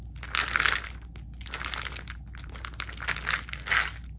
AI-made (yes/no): no